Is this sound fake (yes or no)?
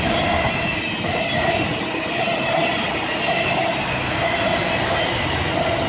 no